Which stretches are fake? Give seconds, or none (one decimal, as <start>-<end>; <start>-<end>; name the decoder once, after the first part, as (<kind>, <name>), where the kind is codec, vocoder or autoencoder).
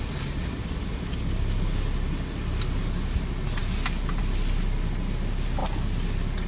none